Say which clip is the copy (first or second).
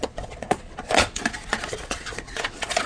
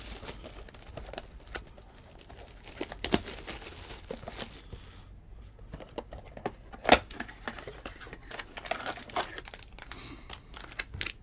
first